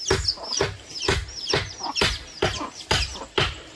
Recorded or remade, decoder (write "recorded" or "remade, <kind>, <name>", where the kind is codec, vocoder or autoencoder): recorded